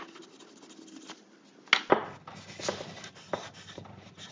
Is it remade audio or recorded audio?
recorded